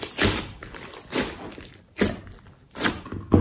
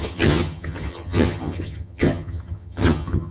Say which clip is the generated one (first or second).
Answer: second